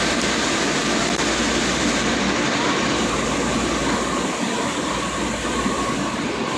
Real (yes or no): yes